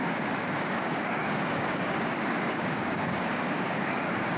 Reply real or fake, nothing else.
fake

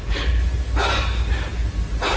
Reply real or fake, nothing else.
real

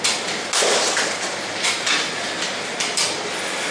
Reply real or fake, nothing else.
real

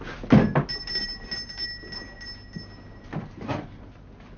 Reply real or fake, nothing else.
real